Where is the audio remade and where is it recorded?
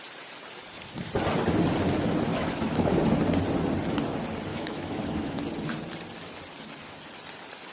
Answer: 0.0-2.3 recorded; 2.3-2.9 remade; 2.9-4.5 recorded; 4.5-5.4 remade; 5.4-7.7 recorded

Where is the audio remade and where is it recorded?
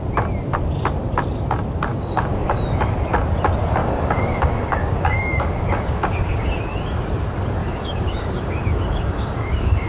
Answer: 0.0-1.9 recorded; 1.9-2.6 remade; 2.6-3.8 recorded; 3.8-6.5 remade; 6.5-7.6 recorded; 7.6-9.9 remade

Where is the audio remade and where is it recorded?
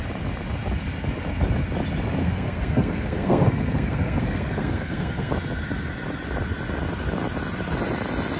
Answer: 0.0-2.2 recorded; 2.2-5.3 remade; 5.3-8.4 recorded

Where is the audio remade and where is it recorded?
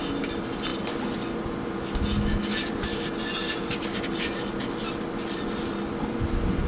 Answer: 0.0-6.7 recorded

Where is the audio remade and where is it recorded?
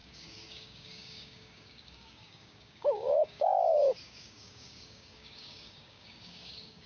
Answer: 0.0-6.9 remade